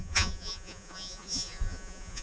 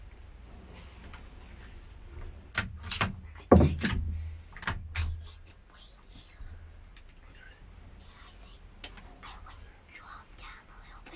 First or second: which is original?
second